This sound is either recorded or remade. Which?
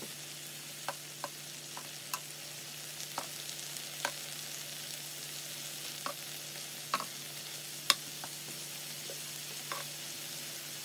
recorded